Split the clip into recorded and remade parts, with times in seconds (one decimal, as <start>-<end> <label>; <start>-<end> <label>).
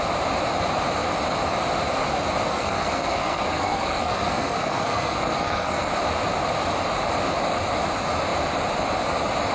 0.0-2.5 recorded; 2.5-5.9 remade; 5.9-9.5 recorded